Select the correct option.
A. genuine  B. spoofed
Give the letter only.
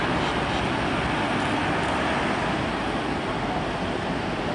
A